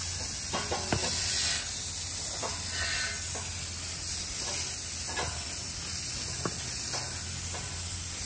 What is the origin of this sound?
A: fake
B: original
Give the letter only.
B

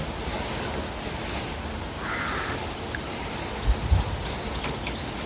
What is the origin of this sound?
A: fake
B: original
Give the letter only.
B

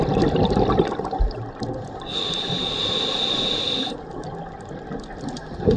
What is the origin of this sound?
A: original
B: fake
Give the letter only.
A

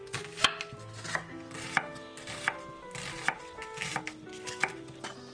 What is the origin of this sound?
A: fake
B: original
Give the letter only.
B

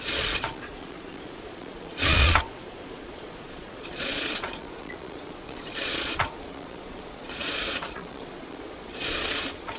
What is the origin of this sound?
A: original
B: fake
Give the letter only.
B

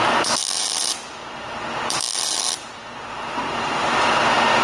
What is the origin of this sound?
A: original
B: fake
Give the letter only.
A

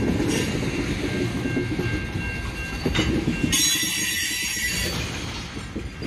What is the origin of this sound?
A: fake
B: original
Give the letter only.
B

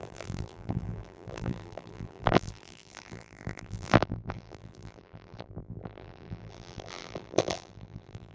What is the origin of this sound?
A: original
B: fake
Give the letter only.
B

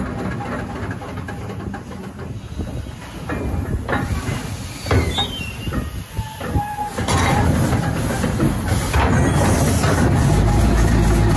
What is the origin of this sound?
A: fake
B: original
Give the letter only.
B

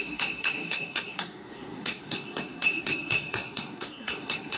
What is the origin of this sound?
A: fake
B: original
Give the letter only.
A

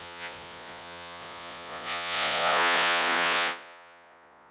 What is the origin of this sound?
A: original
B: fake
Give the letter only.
B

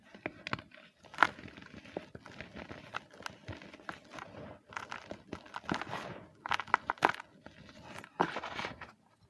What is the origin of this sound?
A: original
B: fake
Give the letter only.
A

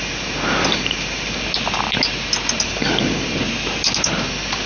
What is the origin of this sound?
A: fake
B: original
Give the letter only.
B